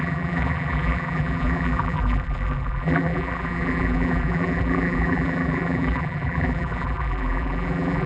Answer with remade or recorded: remade